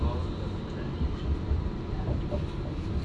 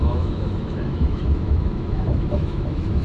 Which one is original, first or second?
first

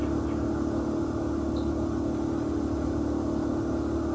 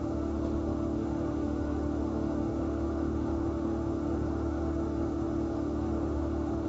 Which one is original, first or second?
first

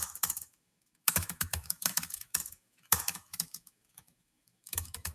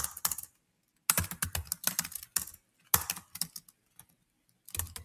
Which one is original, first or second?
second